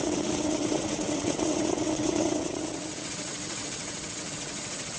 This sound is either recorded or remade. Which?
remade